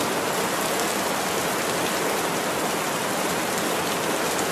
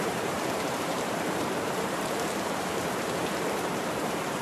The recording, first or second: first